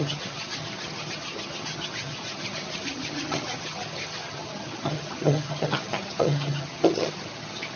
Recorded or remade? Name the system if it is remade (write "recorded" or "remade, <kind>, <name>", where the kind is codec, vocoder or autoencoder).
remade, vocoder, HiFi-GAN